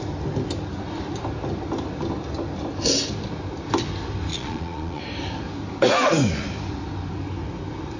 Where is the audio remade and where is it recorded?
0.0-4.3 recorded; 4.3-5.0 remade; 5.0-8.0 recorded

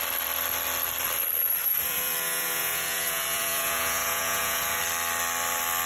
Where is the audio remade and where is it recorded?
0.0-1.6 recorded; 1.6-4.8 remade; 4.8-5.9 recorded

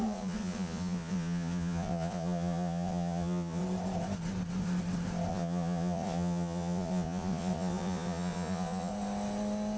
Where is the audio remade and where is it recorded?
0.0-3.6 remade; 3.6-5.3 recorded; 5.3-8.9 remade; 8.9-9.8 recorded